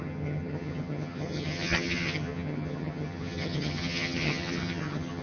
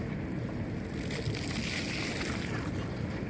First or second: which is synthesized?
first